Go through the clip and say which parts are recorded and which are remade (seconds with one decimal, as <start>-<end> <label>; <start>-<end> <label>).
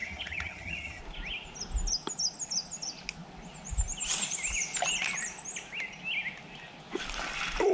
0.0-1.0 remade; 1.0-7.7 recorded